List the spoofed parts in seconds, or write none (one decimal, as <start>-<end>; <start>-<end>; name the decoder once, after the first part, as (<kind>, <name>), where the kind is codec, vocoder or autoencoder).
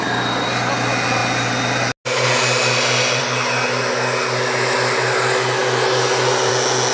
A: none